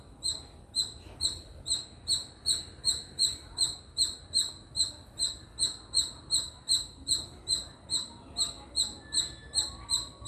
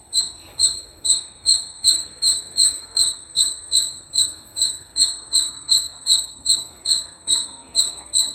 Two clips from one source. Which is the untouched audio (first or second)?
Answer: first